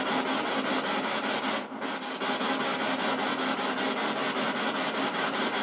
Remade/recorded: recorded